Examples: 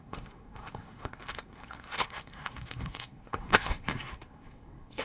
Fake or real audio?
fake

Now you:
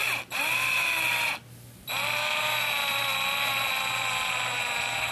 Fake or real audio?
real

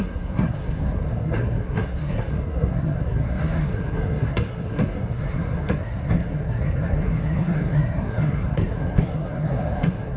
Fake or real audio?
fake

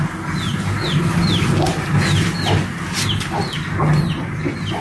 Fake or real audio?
real